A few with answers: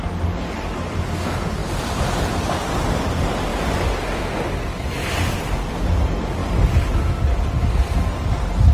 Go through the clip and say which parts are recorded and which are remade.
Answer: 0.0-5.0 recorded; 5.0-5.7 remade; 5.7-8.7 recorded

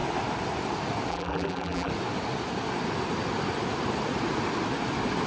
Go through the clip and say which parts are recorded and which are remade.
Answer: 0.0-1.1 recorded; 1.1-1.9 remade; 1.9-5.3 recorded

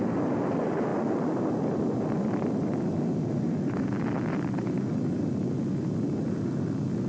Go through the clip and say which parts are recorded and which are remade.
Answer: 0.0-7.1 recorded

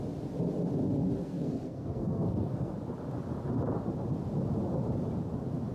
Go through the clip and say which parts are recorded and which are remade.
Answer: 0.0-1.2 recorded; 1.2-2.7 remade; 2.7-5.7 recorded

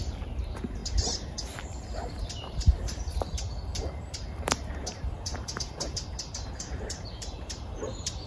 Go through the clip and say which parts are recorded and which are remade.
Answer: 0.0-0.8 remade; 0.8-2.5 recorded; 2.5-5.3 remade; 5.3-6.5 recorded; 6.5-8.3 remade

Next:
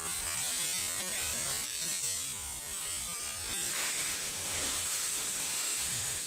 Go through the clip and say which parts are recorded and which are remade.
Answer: 0.0-3.7 recorded; 3.7-6.3 remade